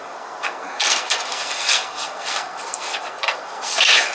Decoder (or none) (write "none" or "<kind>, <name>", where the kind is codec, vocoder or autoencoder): codec, SNAC